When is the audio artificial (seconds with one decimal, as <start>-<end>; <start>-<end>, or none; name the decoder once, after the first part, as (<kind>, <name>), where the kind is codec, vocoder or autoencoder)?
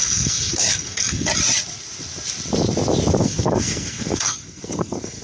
0.0-1.3 (codec, SNAC); 3.2-5.2